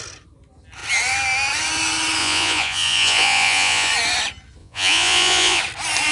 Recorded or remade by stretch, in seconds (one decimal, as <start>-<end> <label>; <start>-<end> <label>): 0.0-2.2 recorded; 2.2-3.9 remade; 3.9-4.6 recorded; 4.6-5.6 remade; 5.6-6.1 recorded